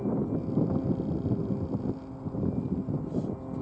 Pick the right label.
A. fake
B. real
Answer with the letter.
B